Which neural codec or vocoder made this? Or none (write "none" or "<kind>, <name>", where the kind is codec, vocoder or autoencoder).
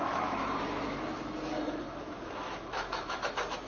autoencoder, DAC-VAE